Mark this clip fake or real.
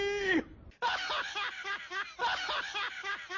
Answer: real